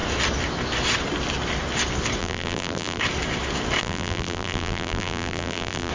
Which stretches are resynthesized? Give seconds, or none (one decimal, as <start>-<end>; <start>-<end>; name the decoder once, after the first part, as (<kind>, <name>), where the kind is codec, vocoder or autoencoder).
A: 2.2-3.0 (vocoder, BigVGAN v2); 3.8-5.9